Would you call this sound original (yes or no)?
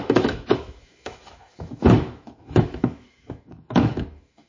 no